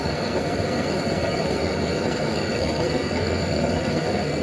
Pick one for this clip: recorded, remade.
remade